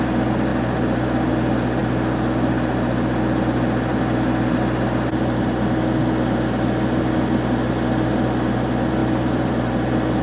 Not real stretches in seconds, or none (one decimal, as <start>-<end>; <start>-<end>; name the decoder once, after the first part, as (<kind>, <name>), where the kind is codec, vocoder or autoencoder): 9.0-10.2 (vocoder, BigVGAN v2)